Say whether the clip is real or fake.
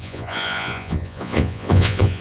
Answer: fake